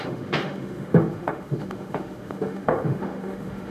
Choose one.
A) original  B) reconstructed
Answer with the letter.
B